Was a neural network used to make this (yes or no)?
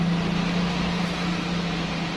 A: no